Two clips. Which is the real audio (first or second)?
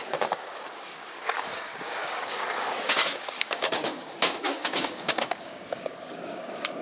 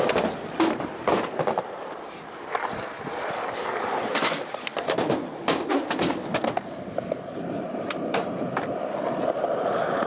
second